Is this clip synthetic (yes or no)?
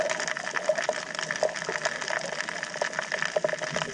no